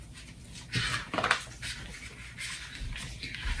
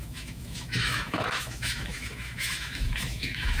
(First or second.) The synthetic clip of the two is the second